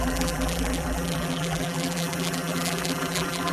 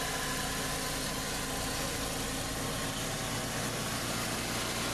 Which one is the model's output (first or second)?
first